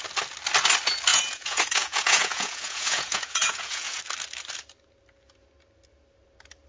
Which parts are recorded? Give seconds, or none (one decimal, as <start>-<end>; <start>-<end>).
0.0-1.1; 4.0-6.7